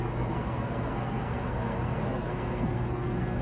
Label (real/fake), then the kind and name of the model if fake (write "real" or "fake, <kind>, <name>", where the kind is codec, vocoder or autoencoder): fake, codec, SNAC